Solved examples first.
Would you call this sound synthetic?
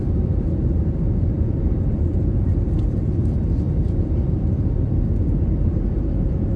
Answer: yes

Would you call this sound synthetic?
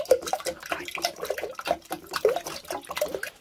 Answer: yes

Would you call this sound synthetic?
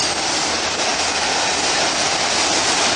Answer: no